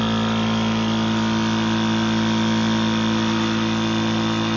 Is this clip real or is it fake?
real